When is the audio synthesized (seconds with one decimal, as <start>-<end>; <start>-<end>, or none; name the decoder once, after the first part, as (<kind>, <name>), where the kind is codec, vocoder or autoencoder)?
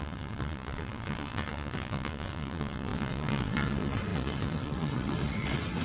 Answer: 0.0-5.8 (vocoder, WaveNeXt)